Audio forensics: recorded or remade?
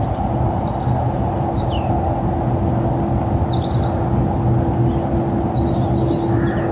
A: recorded